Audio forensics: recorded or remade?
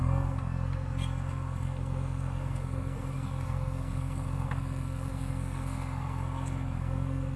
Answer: remade